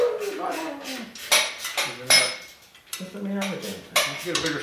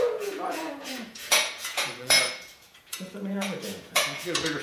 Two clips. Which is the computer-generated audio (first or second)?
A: second